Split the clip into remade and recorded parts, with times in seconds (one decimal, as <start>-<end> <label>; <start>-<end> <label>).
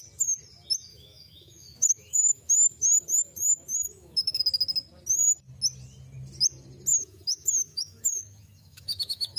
0.0-0.9 recorded; 0.9-4.4 remade; 4.4-6.9 recorded; 6.9-9.4 remade